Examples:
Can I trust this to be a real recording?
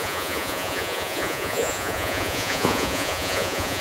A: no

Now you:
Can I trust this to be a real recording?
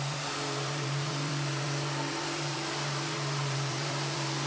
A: no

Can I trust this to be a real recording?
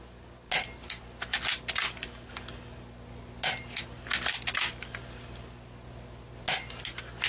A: yes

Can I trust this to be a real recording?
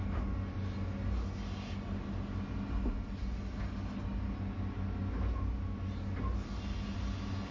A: yes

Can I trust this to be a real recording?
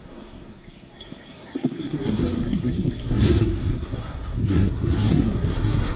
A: no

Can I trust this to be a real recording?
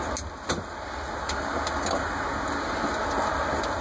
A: yes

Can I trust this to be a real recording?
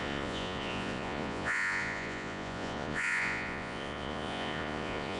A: no